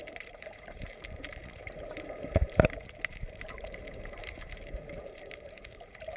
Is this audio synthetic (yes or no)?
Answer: yes